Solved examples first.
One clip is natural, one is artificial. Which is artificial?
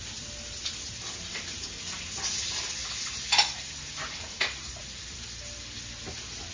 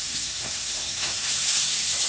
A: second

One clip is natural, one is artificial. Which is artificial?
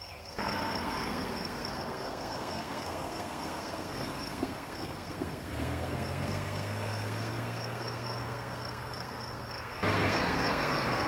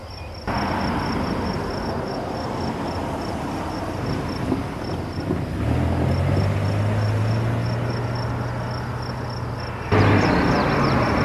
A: first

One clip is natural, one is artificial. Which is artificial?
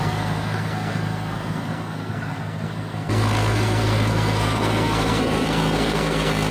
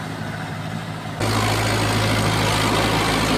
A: first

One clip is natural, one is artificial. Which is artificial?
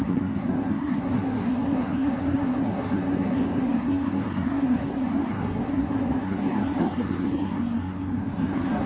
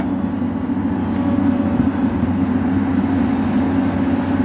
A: first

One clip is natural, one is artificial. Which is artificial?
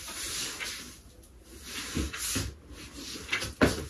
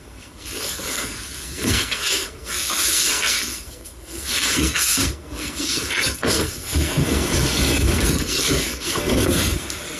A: second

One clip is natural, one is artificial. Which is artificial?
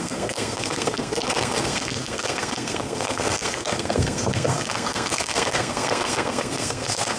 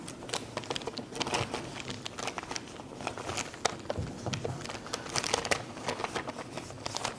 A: first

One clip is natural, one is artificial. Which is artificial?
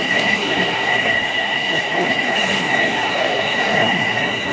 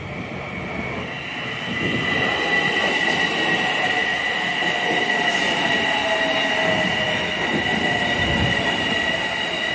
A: first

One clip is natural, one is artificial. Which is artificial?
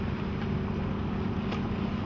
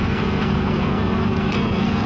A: second